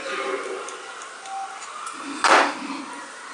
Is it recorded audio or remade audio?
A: recorded